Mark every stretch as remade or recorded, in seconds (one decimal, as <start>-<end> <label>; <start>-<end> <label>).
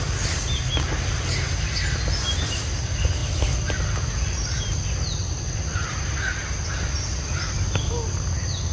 0.0-3.2 recorded; 3.2-3.8 remade; 3.8-5.2 recorded; 5.2-5.9 remade; 5.9-8.7 recorded